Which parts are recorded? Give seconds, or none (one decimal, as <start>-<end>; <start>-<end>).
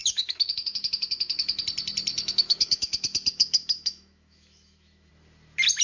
1.6-2.1; 5.1-5.8